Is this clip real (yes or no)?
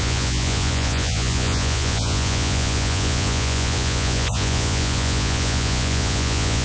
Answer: no